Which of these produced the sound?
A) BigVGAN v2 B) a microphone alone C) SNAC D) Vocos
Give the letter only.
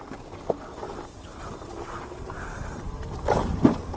A